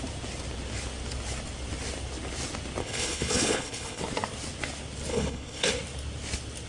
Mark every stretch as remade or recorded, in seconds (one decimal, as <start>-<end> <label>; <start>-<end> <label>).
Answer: 0.0-2.8 recorded; 2.8-4.0 remade; 4.0-5.1 recorded; 5.1-5.7 remade; 5.7-6.7 recorded